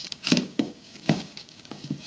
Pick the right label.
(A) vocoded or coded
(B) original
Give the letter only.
A